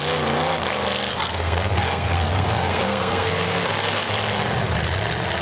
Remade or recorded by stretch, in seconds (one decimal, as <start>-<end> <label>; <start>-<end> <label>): 0.0-1.1 recorded; 1.1-4.1 remade; 4.1-5.4 recorded